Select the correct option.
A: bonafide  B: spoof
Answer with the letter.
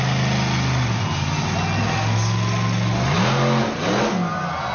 A